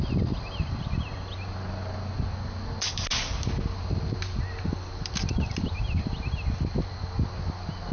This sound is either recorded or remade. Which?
recorded